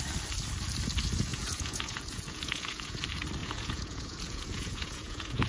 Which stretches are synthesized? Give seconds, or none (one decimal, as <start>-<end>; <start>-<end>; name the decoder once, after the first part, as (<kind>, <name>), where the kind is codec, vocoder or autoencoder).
1.3-3.0 (vocoder, Vocos); 3.4-5.5